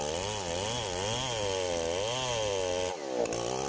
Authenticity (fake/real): real